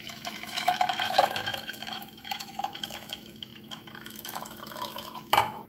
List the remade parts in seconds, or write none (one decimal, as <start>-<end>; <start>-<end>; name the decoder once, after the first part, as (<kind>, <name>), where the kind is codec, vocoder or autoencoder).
0.0-5.7 (autoencoder, DAC-VAE)